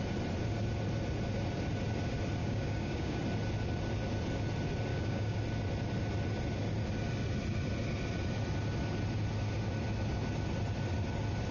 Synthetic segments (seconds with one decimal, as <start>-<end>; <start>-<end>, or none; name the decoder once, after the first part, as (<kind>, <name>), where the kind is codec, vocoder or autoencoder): 2.4-3.2 (codec, DAC); 4.9-5.4